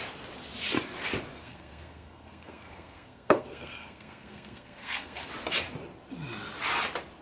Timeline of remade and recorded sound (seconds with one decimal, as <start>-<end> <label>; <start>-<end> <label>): 0.0-1.4 recorded; 1.4-5.3 remade; 5.3-7.2 recorded